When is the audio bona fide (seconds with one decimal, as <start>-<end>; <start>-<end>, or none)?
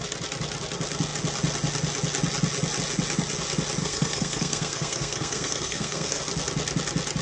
0.0-3.8; 6.2-7.2